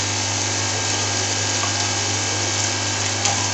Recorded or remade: recorded